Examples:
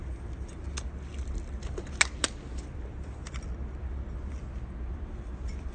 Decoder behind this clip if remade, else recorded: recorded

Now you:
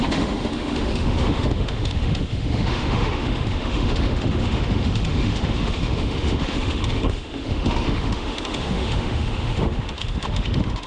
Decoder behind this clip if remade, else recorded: remade, autoencoder, DAC-VAE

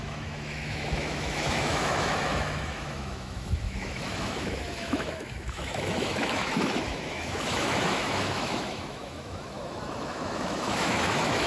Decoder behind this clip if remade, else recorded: remade, autoencoder, DAC-VAE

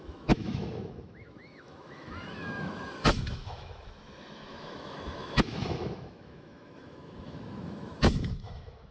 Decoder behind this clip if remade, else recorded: remade, autoencoder, DAC-VAE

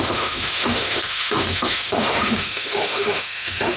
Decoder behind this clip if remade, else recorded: remade, autoencoder, DAC-VAE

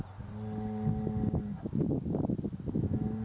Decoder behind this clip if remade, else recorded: recorded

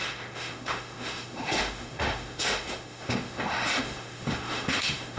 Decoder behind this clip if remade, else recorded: remade, autoencoder, DAC-VAE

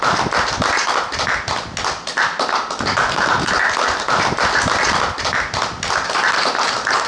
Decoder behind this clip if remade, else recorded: recorded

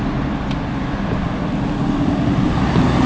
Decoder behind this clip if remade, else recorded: recorded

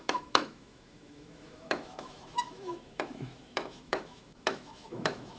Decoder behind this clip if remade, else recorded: remade, autoencoder, DAC-VAE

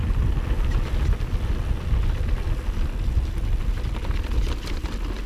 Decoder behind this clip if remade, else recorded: recorded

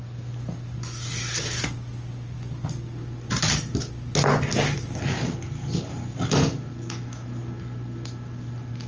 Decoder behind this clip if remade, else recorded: recorded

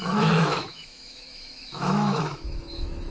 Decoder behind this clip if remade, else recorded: remade, autoencoder, DAC-VAE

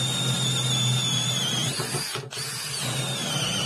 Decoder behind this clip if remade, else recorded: recorded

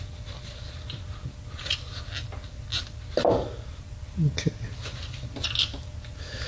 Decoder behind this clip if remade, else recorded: recorded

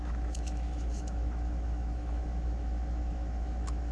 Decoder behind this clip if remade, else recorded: remade, autoencoder, DAC-VAE